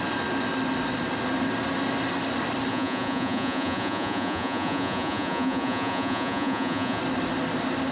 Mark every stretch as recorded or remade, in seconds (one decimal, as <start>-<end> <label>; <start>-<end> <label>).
0.0-2.7 recorded; 2.7-7.0 remade; 7.0-7.9 recorded